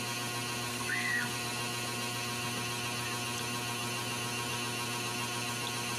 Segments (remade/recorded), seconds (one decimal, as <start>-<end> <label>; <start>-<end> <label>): 0.0-0.7 recorded; 0.7-1.3 remade; 1.3-6.0 recorded

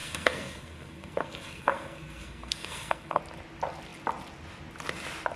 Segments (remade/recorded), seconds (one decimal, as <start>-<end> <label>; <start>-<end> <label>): 0.0-3.2 remade; 3.2-5.4 recorded

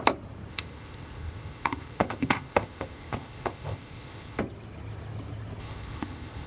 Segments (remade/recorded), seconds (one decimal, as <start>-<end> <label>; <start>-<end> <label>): 0.0-0.5 recorded; 0.5-4.4 remade; 4.4-5.6 recorded; 5.6-6.5 remade

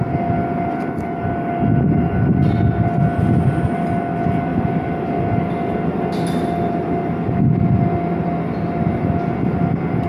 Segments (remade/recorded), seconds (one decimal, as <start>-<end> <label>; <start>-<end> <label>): 0.0-10.1 recorded

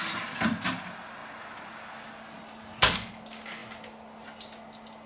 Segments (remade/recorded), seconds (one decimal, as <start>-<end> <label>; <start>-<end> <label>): 0.0-5.1 recorded

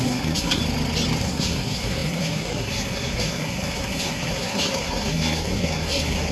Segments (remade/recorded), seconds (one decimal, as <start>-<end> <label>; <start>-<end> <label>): 0.0-0.6 remade; 0.6-1.2 recorded; 1.2-6.3 remade

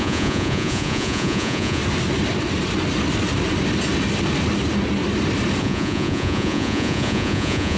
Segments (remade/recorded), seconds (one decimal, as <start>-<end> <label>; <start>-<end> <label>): 0.0-1.8 remade; 1.8-5.6 recorded; 5.6-7.8 remade

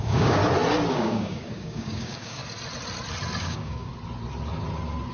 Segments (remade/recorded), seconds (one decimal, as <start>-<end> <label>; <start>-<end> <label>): 0.0-0.4 remade; 0.4-0.9 recorded; 0.9-2.4 remade; 2.4-3.4 recorded; 3.4-3.9 remade; 3.9-5.1 recorded